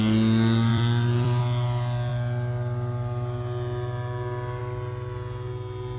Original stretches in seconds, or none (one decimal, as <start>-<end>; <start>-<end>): 0.0-0.7; 1.4-6.0